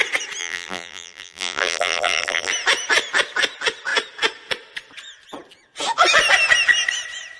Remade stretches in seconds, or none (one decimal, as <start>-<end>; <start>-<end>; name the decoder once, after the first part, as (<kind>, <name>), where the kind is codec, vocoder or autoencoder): 0.4-2.5 (vocoder, BigVGAN v2)